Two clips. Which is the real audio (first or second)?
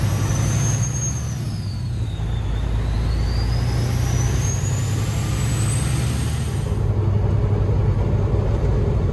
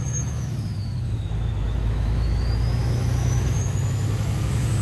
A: first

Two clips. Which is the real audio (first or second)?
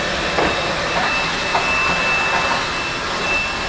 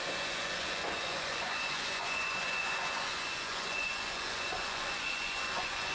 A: first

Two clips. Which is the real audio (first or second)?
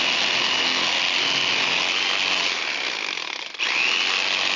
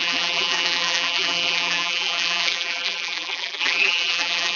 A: first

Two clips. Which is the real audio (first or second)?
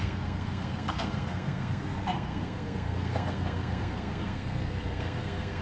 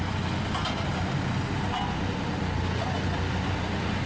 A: second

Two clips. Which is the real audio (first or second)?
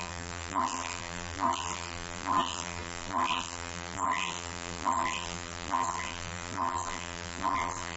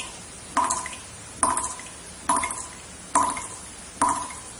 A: second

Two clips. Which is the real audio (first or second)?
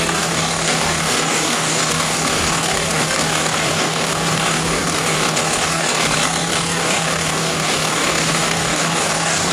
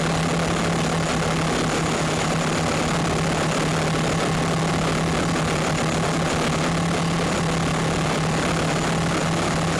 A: second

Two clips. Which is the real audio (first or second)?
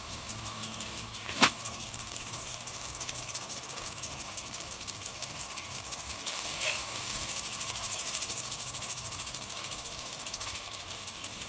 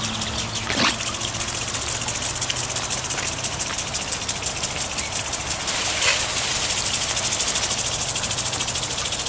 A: second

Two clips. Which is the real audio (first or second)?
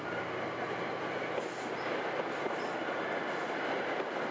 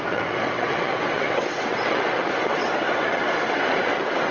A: first